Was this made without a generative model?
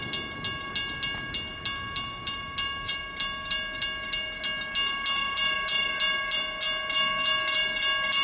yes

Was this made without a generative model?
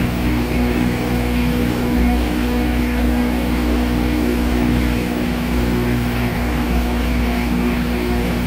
no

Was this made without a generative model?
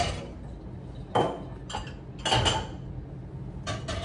yes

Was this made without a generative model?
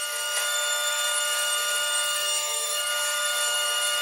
no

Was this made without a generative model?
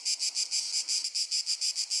yes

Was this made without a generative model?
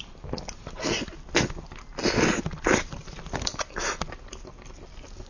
yes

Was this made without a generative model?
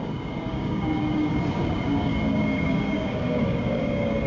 no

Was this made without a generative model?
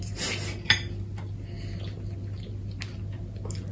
yes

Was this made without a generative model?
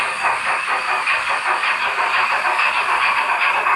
no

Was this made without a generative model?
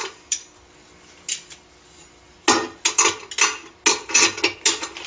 yes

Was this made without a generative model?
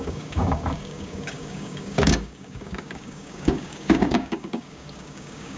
no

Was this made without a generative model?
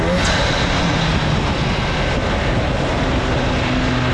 yes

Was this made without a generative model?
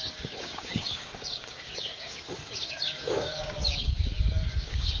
no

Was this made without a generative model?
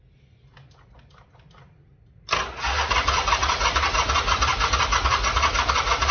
yes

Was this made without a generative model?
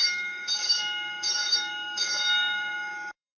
no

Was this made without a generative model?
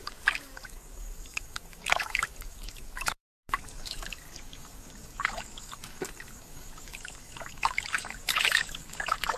no